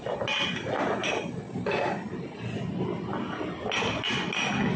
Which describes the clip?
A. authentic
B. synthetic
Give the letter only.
A